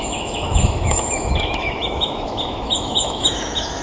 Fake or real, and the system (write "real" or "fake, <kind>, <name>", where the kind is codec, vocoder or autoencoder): fake, autoencoder, DAC-VAE